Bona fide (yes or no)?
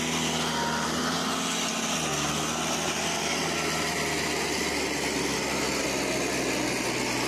yes